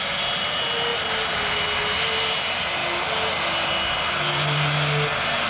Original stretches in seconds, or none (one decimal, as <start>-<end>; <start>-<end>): 0.0-5.5